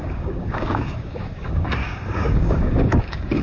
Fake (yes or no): yes